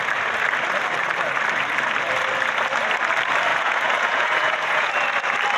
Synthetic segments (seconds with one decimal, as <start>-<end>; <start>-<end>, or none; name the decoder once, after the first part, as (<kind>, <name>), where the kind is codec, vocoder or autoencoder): 3.5-4.9 (vocoder, Vocos)